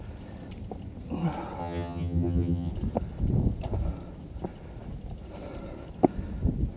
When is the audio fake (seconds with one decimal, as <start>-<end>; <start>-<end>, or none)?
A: 1.6-2.7